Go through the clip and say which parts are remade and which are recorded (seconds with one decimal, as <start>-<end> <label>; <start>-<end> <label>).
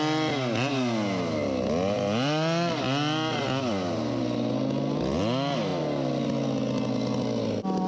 0.0-7.9 recorded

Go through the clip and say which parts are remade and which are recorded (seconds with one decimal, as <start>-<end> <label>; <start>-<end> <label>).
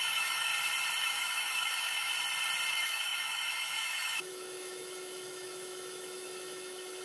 0.0-0.5 remade; 0.5-1.0 recorded; 1.0-2.1 remade; 2.1-2.7 recorded; 2.7-7.0 remade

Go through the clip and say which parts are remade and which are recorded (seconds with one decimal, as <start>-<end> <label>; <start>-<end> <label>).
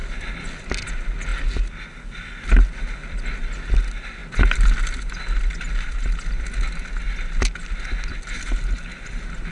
0.0-9.5 recorded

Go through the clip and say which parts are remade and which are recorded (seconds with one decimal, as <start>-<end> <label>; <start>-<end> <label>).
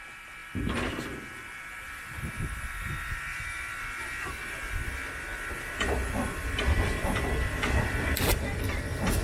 0.0-9.2 remade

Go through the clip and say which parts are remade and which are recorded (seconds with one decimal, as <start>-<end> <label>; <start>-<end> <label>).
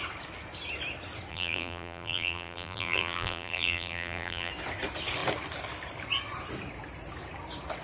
0.0-1.3 recorded; 1.3-4.5 remade; 4.5-7.8 recorded